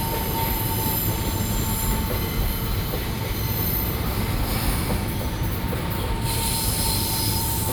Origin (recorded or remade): recorded